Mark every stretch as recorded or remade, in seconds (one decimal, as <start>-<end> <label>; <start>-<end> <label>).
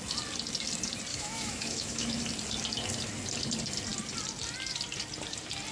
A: 0.0-1.1 recorded; 1.1-2.2 remade; 2.2-5.7 recorded